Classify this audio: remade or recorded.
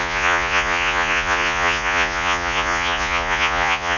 remade